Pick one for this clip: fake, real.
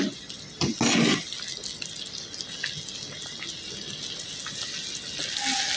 real